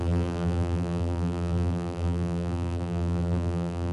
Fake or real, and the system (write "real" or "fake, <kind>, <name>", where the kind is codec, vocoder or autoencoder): fake, vocoder, BigVGAN v2